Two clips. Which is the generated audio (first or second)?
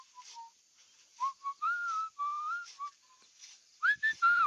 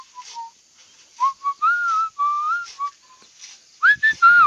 first